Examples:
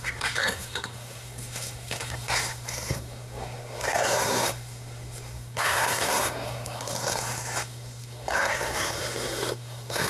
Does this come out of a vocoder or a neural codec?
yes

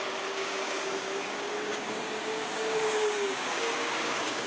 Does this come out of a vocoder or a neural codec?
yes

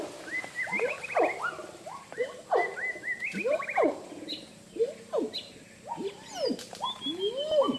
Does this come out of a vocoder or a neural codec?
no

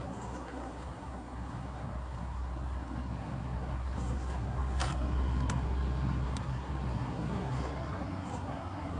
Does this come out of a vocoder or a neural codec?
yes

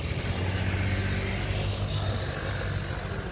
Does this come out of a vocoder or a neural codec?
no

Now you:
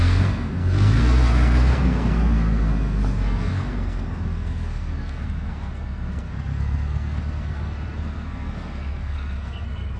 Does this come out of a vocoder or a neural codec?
yes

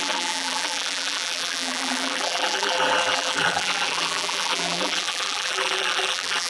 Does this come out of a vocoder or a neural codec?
yes